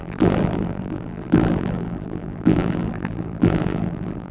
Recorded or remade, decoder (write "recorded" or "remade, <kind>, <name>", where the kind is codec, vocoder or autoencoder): remade, vocoder, BigVGAN v2